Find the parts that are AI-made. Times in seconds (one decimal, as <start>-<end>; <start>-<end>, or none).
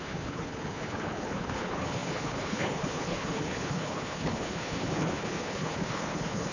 0.0-6.5